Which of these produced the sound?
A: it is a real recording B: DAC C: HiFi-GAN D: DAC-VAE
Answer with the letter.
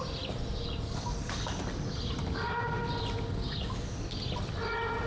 A